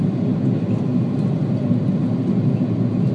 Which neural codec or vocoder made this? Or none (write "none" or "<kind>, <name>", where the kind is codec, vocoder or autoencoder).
none